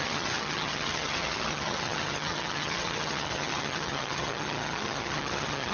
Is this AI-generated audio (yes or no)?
yes